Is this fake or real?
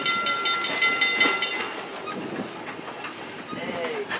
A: real